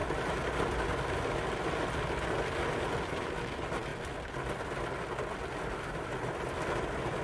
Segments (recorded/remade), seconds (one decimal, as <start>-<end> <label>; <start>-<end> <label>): 0.0-7.2 recorded